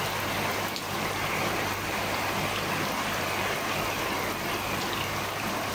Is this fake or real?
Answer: fake